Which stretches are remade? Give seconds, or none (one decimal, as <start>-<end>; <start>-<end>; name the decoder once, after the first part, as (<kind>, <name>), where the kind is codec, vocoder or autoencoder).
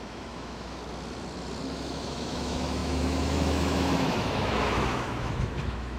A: 0.0-0.8 (autoencoder, DAC-VAE); 1.7-6.0